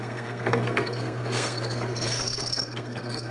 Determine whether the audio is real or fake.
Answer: fake